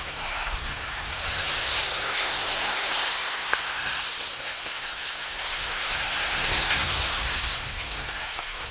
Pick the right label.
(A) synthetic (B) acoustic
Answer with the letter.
A